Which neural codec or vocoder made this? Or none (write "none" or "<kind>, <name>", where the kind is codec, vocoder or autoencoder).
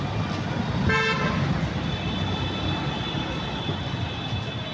none